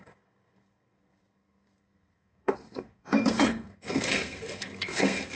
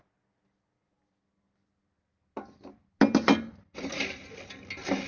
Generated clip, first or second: first